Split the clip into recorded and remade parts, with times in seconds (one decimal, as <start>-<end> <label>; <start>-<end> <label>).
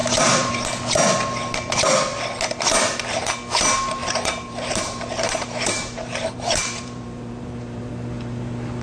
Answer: 0.0-0.5 remade; 0.5-4.0 recorded; 4.0-7.9 remade; 7.9-8.8 recorded